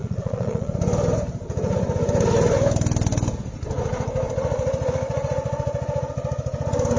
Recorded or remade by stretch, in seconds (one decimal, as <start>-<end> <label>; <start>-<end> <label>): 0.0-0.7 remade; 0.7-7.0 recorded